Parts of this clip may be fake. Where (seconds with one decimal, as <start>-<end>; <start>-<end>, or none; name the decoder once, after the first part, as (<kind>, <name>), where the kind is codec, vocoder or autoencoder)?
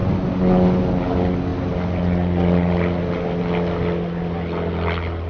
none